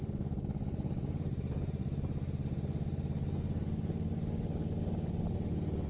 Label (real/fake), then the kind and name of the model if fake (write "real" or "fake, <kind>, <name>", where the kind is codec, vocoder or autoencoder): real